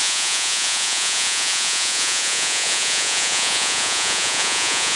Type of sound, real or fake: fake